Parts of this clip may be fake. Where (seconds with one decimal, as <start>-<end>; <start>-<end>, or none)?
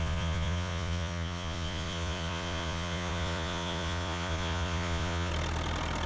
0.0-5.3